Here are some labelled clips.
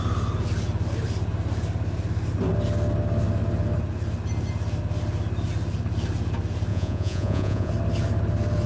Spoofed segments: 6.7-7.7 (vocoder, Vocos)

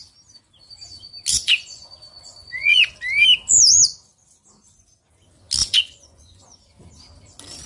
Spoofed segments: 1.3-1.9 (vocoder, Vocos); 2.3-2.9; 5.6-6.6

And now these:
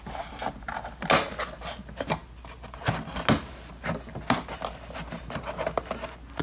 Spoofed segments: none